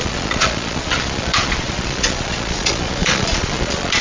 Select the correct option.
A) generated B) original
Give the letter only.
A